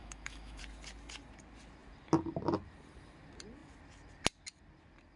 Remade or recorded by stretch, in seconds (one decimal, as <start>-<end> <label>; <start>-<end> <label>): 0.0-0.6 remade; 0.6-5.2 recorded